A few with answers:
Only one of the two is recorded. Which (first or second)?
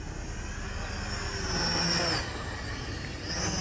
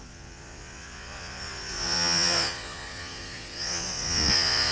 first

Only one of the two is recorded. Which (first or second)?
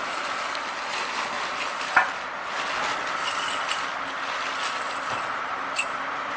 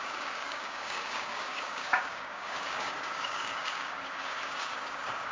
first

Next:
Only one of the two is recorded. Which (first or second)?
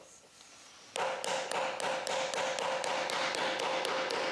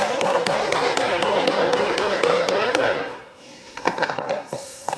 first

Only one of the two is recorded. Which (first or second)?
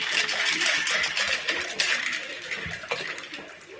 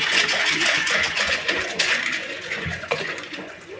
first